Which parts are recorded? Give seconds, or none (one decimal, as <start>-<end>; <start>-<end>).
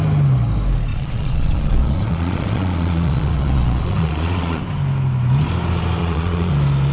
0.0-0.9; 4.6-6.0; 6.5-6.9